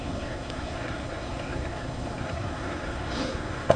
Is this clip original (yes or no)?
no